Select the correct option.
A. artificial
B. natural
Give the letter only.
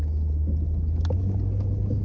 B